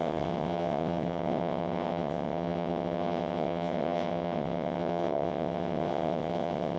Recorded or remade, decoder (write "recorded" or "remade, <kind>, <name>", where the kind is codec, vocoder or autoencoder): remade, vocoder, WaveNeXt